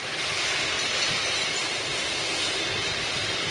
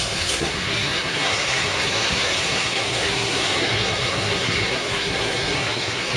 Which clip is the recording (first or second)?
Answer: first